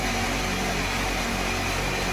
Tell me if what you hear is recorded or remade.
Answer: recorded